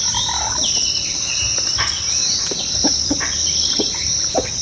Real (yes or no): yes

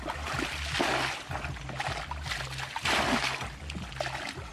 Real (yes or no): yes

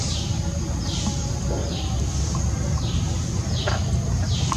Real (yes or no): yes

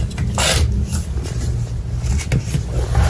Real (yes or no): yes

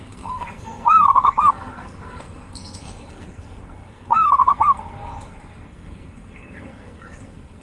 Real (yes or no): no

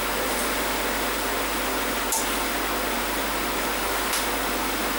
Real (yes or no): yes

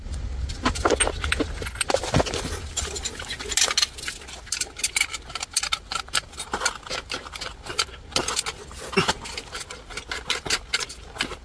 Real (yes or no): yes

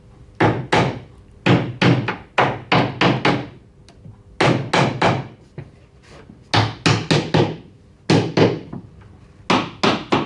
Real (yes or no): yes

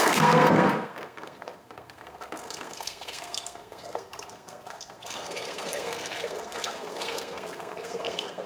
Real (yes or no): no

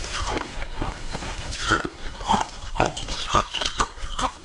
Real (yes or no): no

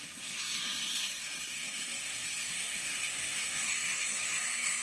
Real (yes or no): no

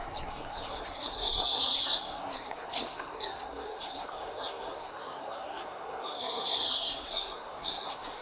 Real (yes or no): no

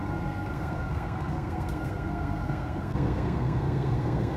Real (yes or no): no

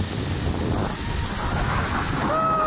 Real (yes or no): yes